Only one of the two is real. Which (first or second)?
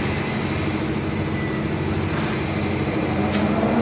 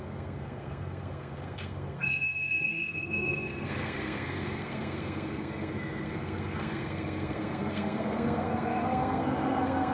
first